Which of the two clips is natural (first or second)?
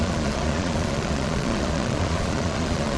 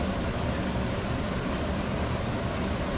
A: second